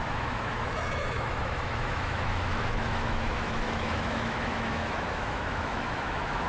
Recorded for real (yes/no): no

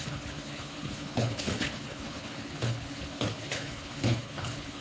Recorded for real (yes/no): no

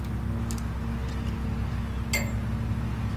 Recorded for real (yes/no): yes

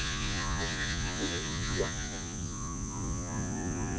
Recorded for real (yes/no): no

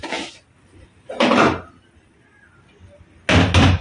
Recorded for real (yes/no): yes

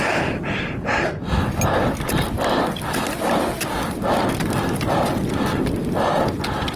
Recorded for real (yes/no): yes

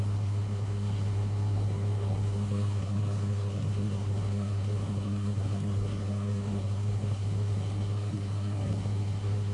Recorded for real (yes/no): no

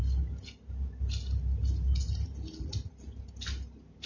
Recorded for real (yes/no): yes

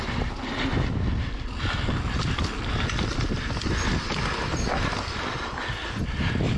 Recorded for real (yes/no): yes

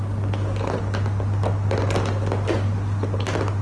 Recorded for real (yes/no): yes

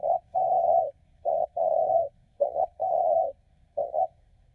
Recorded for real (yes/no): no